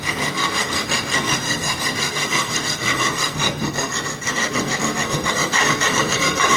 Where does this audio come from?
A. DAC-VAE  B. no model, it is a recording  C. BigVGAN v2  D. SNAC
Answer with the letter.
D